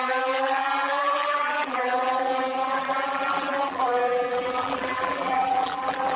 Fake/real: fake